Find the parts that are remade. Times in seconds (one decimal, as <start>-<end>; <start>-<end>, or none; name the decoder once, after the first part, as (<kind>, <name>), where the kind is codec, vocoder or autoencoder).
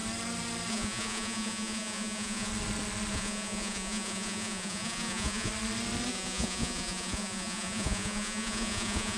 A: 0.7-2.5 (vocoder, Vocos); 3.1-5.5; 6.1-9.2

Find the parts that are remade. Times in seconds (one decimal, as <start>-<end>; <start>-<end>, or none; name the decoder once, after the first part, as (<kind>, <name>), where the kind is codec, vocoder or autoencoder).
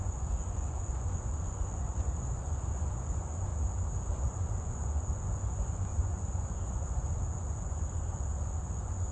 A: 0.0-3.5 (vocoder, Vocos); 4.0-9.1